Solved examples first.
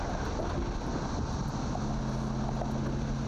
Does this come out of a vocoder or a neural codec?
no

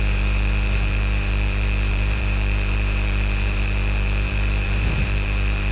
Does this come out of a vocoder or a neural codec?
yes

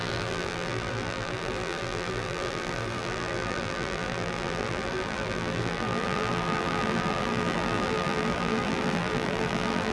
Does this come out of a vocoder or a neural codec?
yes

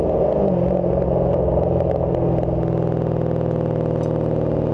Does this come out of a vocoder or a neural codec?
no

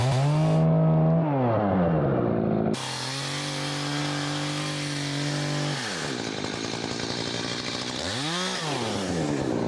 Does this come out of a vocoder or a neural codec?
no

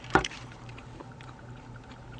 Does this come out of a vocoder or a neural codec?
yes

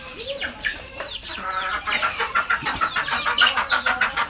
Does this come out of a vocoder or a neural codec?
yes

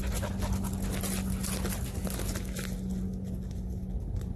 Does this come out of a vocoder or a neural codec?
no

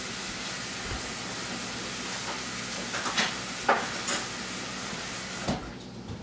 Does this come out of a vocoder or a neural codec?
no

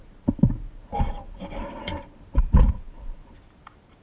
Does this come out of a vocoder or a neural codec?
yes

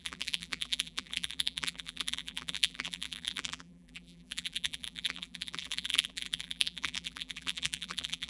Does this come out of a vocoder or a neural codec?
yes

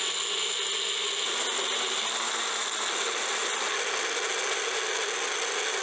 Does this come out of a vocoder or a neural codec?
no